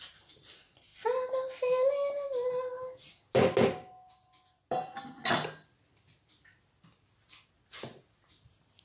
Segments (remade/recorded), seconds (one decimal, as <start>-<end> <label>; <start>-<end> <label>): 0.0-8.8 recorded